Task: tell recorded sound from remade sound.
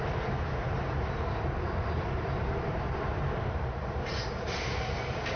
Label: remade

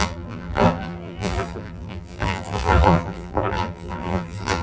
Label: remade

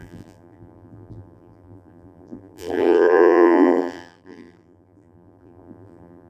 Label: remade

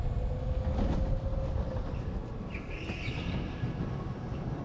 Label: recorded